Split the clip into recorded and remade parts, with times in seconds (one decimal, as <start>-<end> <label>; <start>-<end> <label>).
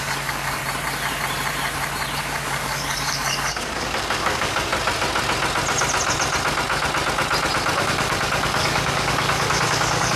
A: 0.0-0.6 remade; 0.6-2.2 recorded; 2.2-4.7 remade; 4.7-7.8 recorded; 7.8-10.2 remade